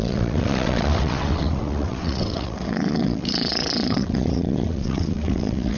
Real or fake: fake